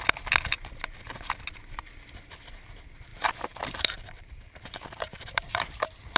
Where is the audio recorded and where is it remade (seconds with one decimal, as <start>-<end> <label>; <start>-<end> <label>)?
0.0-3.1 recorded; 3.1-5.8 remade; 5.8-6.2 recorded